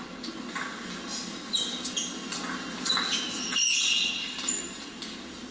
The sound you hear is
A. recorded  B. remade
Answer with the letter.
A